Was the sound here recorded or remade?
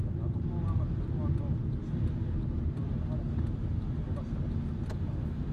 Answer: recorded